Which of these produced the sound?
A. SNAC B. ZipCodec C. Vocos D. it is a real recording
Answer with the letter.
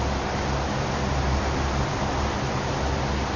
D